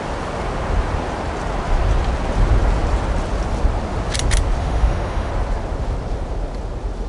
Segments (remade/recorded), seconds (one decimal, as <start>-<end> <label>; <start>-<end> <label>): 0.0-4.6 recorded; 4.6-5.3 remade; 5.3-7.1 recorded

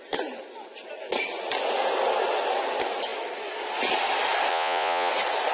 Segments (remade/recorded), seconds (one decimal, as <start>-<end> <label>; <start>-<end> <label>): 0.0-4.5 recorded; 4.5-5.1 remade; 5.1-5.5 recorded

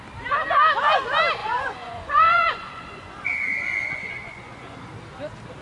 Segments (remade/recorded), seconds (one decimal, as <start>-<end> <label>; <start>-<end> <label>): 0.0-1.4 recorded; 1.4-4.8 remade; 4.8-5.6 recorded

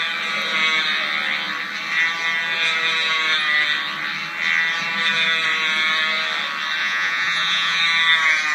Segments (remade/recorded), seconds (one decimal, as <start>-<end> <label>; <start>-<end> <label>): 0.0-6.8 recorded; 6.8-7.8 remade; 7.8-8.5 recorded

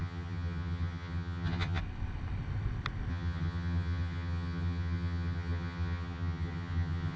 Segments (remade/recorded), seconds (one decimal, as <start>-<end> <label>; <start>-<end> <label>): 0.0-1.8 remade; 1.8-3.1 recorded; 3.1-7.2 remade

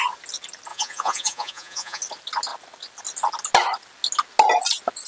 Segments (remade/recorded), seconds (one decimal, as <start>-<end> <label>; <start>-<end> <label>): 0.0-0.7 recorded; 0.7-2.0 remade; 2.0-5.1 recorded

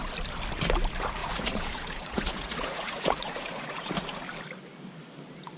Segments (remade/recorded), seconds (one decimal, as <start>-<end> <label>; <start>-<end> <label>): 0.0-1.2 recorded; 1.2-4.2 remade; 4.2-5.6 recorded